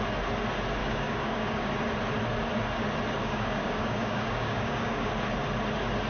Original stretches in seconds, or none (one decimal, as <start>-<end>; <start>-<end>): 0.0-0.8; 1.7-3.2; 5.1-6.1